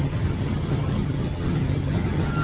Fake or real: fake